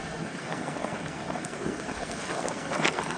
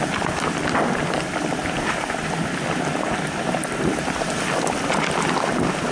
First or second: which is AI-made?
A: first